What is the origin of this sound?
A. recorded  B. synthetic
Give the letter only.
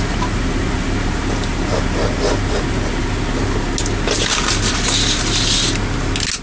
A